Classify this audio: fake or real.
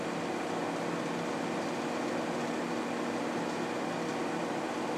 real